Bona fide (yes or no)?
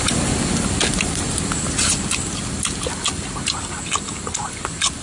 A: yes